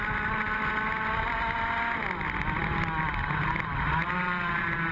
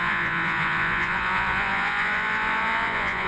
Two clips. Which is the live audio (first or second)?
first